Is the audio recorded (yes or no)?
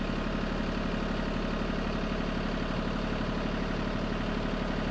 yes